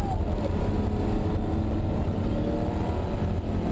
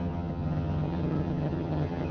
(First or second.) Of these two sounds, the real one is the first